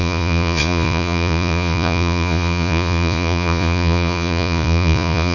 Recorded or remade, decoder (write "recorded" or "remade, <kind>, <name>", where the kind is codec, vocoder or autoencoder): remade, vocoder, Vocos